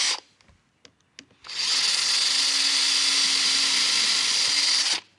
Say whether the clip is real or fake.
real